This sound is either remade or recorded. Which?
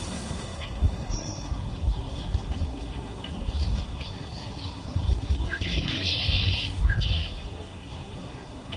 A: remade